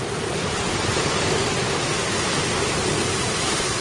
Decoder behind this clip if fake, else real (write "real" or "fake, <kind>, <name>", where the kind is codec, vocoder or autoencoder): real